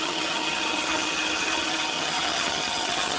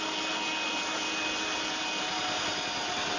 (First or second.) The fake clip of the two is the first